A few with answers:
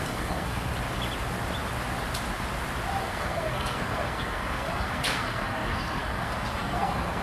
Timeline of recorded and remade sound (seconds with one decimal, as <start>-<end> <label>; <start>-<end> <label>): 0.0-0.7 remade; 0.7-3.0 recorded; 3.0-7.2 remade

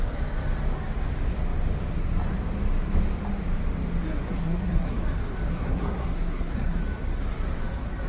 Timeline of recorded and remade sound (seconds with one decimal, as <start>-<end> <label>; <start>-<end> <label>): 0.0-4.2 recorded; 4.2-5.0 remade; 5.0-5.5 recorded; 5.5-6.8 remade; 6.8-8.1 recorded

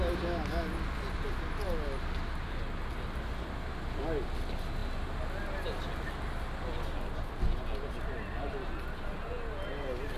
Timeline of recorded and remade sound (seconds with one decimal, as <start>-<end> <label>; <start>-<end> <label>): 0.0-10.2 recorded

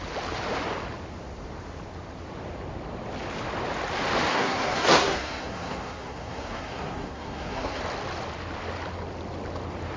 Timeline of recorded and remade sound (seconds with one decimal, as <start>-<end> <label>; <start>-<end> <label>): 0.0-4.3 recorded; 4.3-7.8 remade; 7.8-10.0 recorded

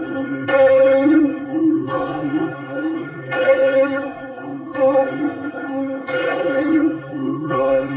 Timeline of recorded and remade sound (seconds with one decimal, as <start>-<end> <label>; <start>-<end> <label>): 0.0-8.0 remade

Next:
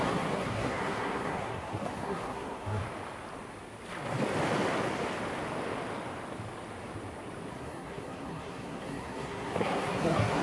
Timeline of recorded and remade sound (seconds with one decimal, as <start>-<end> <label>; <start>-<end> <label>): 0.0-2.8 remade; 2.8-7.5 recorded; 7.5-10.4 remade

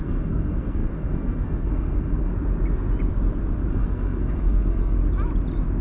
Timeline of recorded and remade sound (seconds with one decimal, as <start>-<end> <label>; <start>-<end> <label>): 0.0-2.3 remade; 2.3-3.7 recorded; 3.7-5.0 remade; 5.0-5.8 recorded

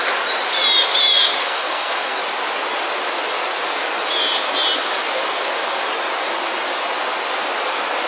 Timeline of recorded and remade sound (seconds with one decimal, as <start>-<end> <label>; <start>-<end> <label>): 0.0-1.4 recorded; 1.4-2.2 remade; 2.2-8.1 recorded